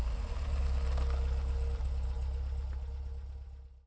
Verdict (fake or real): real